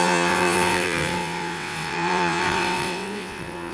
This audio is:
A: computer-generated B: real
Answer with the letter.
A